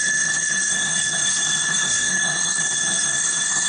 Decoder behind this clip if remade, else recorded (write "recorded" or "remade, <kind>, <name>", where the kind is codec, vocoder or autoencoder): remade, codec, SNAC